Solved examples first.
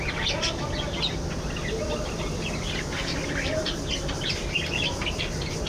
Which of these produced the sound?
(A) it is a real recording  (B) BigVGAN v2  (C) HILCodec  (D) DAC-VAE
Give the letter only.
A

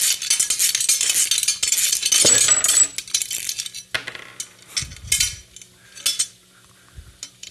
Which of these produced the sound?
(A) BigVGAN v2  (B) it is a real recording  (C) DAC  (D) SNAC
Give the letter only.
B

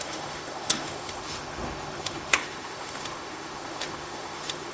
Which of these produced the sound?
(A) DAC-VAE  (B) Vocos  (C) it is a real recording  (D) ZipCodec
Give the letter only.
A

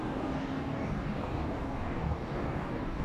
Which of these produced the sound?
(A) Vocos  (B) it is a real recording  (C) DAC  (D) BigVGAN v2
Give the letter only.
C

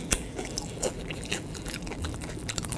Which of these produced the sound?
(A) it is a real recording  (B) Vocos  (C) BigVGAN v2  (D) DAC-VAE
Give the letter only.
C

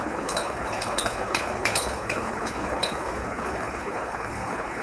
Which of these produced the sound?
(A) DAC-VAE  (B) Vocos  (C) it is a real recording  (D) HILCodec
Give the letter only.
D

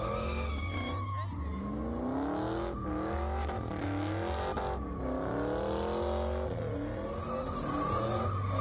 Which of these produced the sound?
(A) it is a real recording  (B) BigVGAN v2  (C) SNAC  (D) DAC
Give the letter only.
A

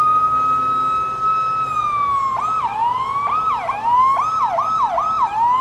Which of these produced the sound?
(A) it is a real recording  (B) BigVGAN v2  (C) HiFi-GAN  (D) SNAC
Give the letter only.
A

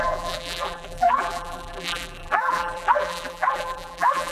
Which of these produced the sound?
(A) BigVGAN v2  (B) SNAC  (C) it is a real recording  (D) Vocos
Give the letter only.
A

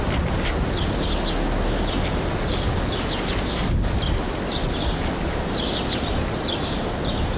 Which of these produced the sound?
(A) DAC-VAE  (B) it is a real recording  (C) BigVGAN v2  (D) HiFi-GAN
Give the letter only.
B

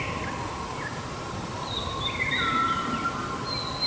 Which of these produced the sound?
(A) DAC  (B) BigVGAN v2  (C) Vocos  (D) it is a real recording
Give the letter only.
D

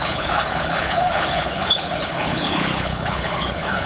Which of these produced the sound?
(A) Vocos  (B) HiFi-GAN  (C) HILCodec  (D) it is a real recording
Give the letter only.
C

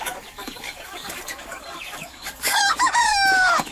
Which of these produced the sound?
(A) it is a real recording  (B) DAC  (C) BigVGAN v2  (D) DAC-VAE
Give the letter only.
B